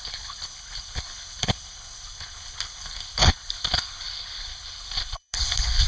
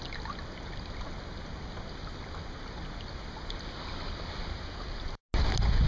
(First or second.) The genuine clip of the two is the second